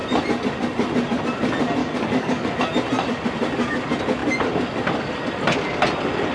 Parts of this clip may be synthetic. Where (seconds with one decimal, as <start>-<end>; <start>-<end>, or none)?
1.8-2.5